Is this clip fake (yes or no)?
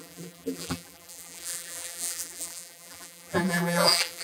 yes